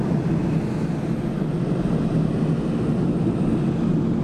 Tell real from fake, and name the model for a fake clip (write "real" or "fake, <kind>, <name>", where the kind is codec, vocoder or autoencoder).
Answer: real